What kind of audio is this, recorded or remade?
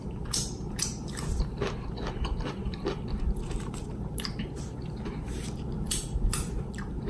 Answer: remade